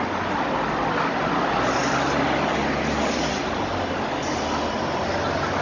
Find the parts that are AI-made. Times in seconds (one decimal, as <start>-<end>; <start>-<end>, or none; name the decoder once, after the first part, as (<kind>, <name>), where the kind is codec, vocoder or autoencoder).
none